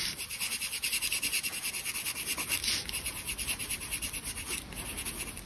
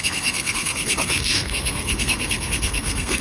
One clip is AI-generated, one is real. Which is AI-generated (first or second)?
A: second